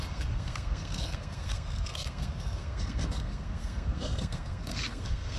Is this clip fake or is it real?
fake